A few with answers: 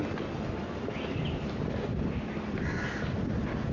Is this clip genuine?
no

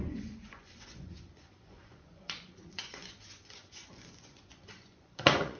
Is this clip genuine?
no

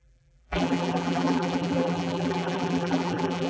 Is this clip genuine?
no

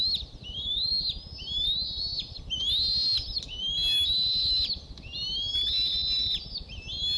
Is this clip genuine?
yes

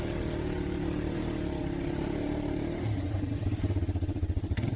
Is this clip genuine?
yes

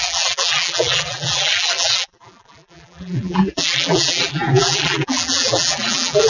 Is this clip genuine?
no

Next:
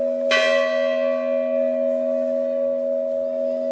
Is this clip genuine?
yes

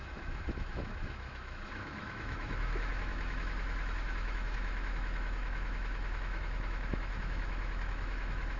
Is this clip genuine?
no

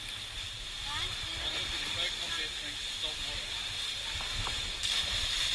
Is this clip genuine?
yes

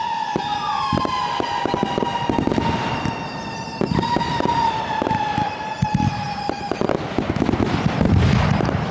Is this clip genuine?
yes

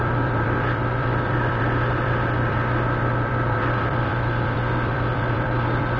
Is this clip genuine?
no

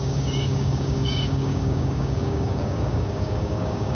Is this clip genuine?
no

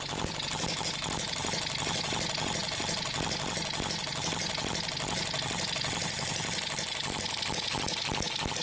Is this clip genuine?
yes